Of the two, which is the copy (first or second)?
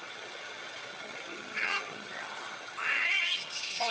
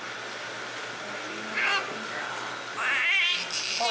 first